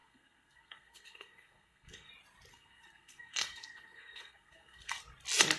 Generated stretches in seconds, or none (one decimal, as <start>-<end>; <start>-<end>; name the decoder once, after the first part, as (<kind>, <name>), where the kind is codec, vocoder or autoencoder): 0.0-2.1 (codec, SNAC); 2.5-5.0